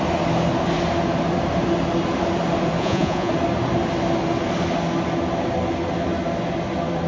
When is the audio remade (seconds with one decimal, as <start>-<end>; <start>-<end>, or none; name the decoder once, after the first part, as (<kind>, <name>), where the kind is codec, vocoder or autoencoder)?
2.8-3.3 (vocoder, Vocos)